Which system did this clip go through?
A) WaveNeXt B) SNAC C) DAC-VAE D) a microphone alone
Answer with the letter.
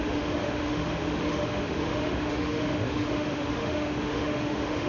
C